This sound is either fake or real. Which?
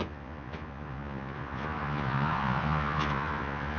fake